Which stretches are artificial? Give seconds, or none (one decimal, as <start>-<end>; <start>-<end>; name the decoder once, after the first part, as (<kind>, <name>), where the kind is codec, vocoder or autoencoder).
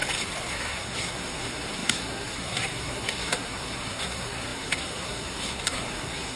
0.5-6.4 (codec, SNAC)